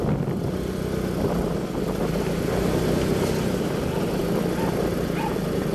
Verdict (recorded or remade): recorded